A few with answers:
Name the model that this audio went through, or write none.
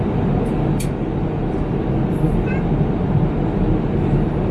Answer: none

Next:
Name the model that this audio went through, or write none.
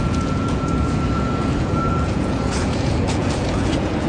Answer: vocoder, Vocos